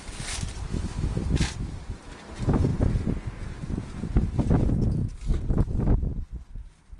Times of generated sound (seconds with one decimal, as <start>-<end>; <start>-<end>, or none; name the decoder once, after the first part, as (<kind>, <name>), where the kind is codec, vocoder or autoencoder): 0.7-1.2 (autoencoder, DAC-VAE)